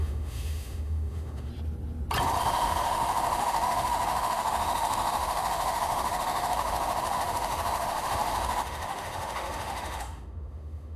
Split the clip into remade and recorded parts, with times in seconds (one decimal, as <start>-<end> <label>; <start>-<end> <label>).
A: 0.0-1.5 remade; 1.5-2.4 recorded; 2.4-11.0 remade